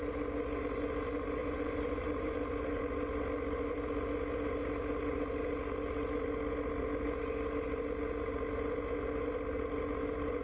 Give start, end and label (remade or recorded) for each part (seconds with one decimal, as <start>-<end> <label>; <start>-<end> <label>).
0.0-1.4 recorded; 1.4-2.8 remade; 2.8-10.4 recorded